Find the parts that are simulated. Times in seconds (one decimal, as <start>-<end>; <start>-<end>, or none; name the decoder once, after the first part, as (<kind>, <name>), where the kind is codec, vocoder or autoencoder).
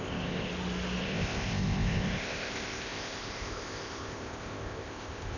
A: 0.0-0.5 (codec, ZipCodec); 1.0-5.4